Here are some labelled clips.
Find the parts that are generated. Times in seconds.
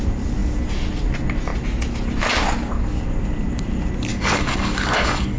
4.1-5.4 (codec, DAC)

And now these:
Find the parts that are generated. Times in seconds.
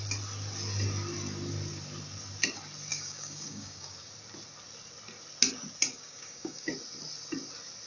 2.9-4.1 (codec, DAC); 5.9-6.7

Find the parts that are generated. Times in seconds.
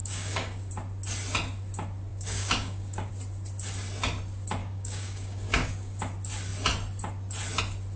0.0-0.7 (codec, DAC); 2.1-3.1; 4.6-6.0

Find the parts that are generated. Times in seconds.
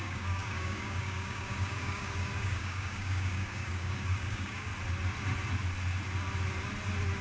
0.0-4.7 (codec, DAC)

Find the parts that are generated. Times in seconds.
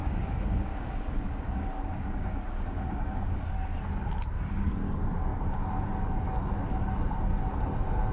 0.0-3.4 (codec, DAC)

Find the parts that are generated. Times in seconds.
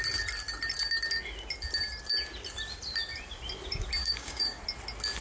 4.0-4.6 (codec, DAC)